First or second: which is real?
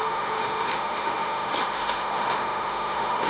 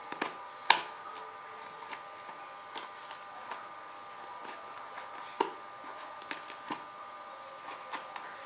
second